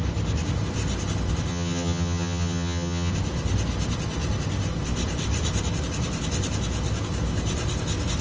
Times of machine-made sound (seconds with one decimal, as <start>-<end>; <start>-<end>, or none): 1.5-3.1